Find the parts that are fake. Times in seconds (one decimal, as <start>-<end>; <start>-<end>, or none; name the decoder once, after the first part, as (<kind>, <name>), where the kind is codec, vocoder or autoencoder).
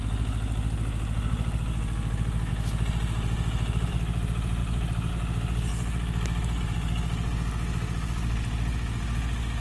4.6-5.1 (vocoder, BigVGAN v2); 5.7-6.6